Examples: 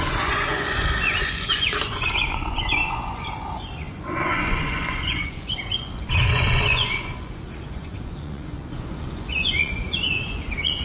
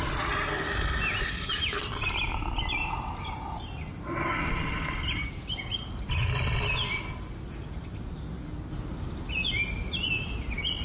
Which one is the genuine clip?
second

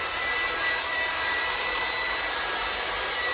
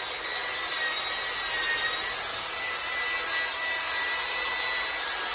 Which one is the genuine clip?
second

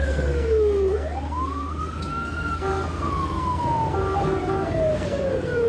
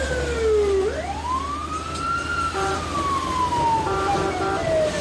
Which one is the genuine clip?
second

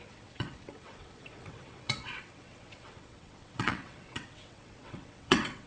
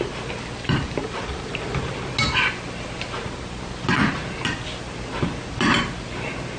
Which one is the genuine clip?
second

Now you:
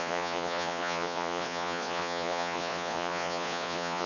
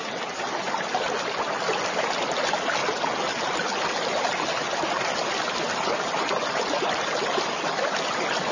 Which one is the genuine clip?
second